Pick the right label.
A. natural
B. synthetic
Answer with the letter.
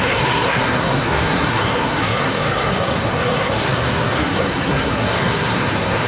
B